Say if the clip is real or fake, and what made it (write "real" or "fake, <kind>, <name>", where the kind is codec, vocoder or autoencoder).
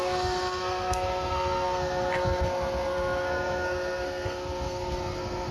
fake, codec, SNAC